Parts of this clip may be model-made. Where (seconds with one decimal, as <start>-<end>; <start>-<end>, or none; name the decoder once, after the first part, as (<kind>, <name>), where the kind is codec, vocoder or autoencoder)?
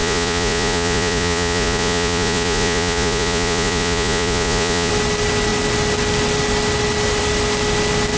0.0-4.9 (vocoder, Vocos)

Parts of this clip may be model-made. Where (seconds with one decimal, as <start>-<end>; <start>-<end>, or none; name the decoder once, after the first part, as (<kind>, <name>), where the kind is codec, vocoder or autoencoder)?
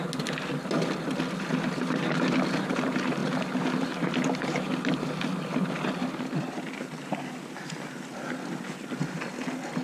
none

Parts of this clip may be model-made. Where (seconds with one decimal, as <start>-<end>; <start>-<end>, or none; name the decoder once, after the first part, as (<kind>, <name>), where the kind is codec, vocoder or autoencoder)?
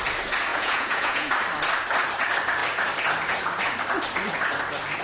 0.5-1.3 (vocoder, Vocos)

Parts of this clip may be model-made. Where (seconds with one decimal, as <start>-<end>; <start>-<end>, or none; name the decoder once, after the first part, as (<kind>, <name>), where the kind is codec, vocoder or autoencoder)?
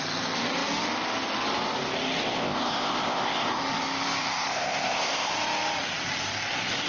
2.2-3.6 (codec, ZipCodec); 4.2-5.3